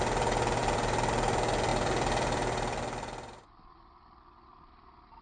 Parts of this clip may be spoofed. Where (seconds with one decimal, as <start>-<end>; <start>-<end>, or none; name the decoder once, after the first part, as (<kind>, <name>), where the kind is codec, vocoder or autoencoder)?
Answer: 1.7-3.7 (vocoder, BigVGAN v2)